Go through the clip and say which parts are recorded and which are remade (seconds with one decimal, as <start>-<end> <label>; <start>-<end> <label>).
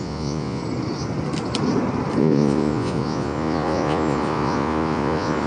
0.0-0.6 remade; 0.6-2.2 recorded; 2.2-5.5 remade